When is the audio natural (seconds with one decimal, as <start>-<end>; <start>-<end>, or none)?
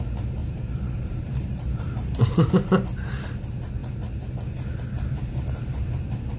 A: 0.0-0.4; 2.5-3.8; 4.3-6.4